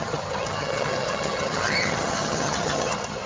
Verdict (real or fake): fake